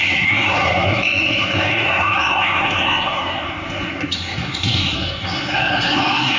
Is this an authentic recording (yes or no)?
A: no